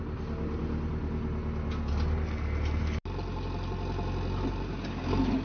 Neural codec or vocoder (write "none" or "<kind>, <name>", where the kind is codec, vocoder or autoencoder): none